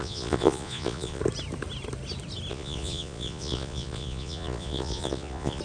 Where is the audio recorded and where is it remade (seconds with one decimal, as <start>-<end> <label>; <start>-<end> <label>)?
0.0-1.2 remade; 1.2-2.5 recorded; 2.5-5.6 remade